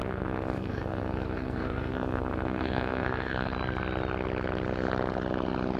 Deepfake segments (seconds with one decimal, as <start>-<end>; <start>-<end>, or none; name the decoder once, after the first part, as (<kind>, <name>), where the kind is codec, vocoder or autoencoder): 0.0-3.5 (codec, SNAC)